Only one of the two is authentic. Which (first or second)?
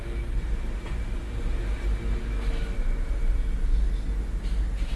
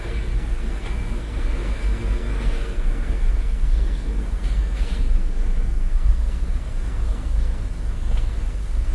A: first